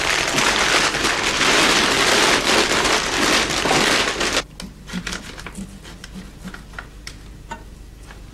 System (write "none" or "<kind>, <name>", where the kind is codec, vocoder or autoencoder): none